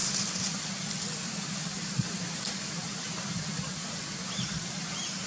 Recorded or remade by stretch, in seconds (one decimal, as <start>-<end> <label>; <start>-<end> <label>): 0.0-0.9 recorded; 0.9-2.8 remade; 2.8-3.5 recorded; 3.5-5.3 remade

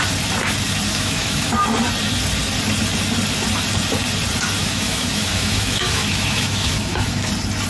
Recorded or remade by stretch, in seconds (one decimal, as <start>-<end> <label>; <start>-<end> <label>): 0.0-0.9 recorded; 0.9-1.5 remade; 1.5-4.6 recorded; 4.6-7.3 remade; 7.3-7.7 recorded